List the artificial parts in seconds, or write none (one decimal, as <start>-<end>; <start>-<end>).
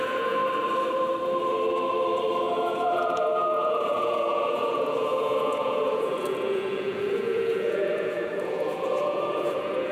0.0-0.4; 2.4-9.9